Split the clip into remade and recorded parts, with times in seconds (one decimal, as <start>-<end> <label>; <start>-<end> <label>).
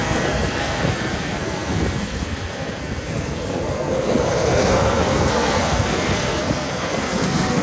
0.0-7.6 remade